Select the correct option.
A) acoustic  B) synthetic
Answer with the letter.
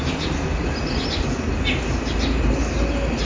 A